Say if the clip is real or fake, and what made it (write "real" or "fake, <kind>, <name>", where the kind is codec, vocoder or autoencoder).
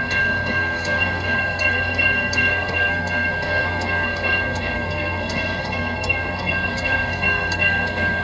fake, codec, SNAC